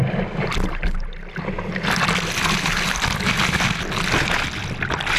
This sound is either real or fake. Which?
real